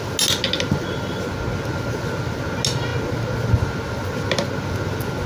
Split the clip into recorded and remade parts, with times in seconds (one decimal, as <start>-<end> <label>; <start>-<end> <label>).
0.0-5.3 recorded